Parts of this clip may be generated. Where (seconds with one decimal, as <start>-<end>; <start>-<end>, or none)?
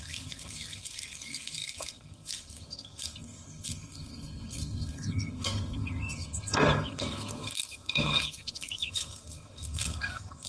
0.0-10.5